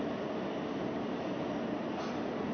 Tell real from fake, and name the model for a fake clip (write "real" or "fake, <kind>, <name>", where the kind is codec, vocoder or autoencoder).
real